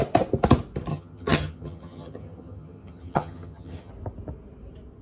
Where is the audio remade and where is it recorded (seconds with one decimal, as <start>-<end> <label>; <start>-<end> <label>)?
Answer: 0.0-0.9 recorded; 0.9-3.9 remade; 3.9-5.0 recorded